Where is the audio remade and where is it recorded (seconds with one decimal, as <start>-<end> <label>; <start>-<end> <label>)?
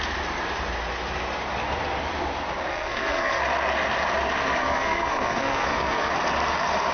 0.0-2.7 recorded; 2.7-3.4 remade; 3.4-4.6 recorded; 4.6-6.1 remade; 6.1-6.9 recorded